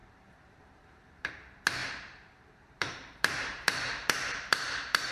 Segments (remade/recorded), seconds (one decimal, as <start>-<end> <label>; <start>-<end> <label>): 0.0-1.3 remade; 1.3-1.8 recorded; 1.8-5.1 remade